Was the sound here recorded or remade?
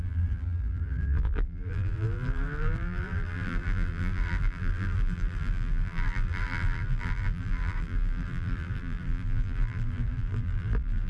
remade